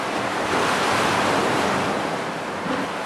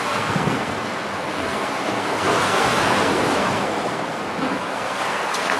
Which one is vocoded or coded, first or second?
second